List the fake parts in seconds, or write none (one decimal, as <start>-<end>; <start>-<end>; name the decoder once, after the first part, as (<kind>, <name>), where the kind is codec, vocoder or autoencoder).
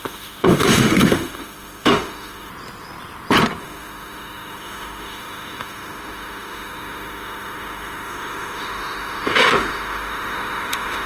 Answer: 0.0-2.5 (autoencoder, DAC-VAE); 3.6-11.1